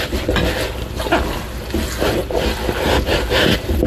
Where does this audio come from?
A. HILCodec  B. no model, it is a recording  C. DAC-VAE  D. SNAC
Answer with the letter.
B